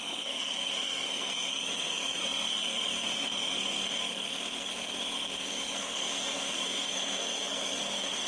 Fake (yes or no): yes